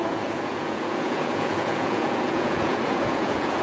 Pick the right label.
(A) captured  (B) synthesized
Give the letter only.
B